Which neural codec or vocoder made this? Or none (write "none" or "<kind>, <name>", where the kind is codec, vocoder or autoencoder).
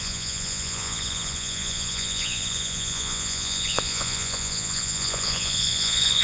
vocoder, Vocos